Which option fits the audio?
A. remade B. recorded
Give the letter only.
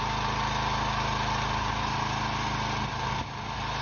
B